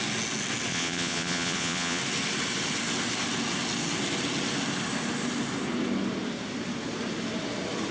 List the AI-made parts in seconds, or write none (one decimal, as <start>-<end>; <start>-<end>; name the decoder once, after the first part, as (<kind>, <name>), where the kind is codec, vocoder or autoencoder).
0.7-2.0 (vocoder, Vocos)